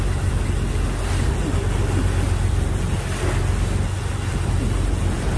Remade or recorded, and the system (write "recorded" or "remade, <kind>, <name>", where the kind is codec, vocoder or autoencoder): recorded